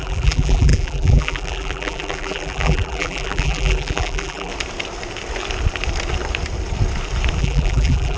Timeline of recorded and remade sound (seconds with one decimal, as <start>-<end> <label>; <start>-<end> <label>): 0.0-4.5 remade; 4.5-7.4 recorded; 7.4-8.2 remade

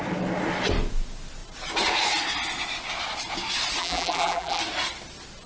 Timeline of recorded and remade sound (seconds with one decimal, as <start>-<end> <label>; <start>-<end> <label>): 0.0-3.8 recorded; 3.8-4.6 remade; 4.6-5.5 recorded

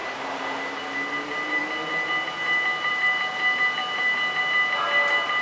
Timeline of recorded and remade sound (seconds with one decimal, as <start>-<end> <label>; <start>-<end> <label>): 0.0-5.4 recorded

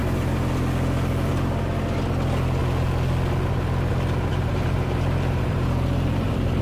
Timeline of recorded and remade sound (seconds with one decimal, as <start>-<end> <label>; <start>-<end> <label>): 0.0-4.3 recorded; 4.3-6.6 remade